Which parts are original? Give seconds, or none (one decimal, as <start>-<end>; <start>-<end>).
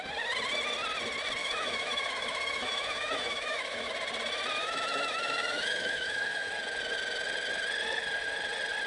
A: 0.0-1.4; 3.9-4.6; 6.5-8.9